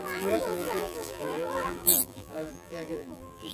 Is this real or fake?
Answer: fake